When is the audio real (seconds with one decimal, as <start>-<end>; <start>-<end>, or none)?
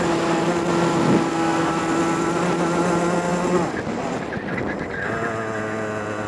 0.0-1.3; 1.8-6.3